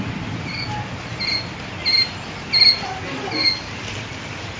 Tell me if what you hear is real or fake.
real